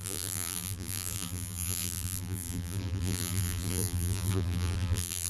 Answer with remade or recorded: remade